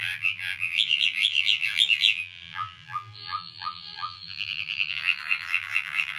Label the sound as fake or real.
fake